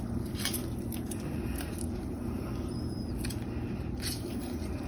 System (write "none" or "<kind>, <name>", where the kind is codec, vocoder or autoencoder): vocoder, BigVGAN v2